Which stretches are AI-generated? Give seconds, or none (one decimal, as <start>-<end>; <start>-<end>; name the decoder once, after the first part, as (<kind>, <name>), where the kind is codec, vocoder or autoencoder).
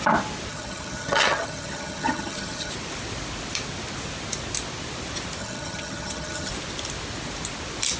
0.5-2.7 (vocoder, HiFi-GAN); 5.4-6.5